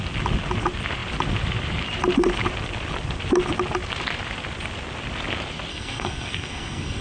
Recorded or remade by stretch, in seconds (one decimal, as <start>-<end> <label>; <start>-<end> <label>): 0.0-5.7 recorded; 5.7-7.0 remade